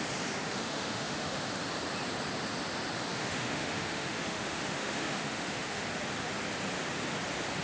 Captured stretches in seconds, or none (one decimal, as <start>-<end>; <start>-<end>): 0.0-0.4; 1.6-3.1; 5.8-7.6

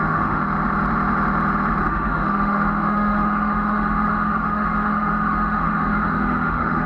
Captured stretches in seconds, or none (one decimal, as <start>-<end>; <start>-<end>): 0.4-1.8

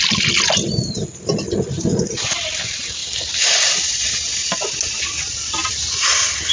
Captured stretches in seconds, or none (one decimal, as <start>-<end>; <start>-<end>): 0.0-6.5

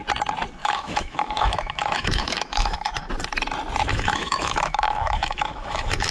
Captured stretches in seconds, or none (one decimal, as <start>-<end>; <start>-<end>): 0.0-0.6; 3.1-3.9

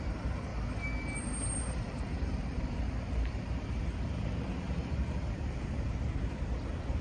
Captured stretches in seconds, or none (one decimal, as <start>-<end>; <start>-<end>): 0.5-1.6

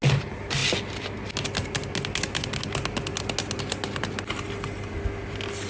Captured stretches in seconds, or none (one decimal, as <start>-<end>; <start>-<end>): 0.0-5.7